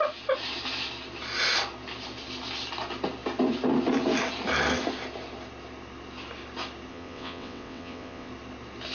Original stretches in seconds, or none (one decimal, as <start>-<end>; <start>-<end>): 0.0-6.9; 8.3-8.9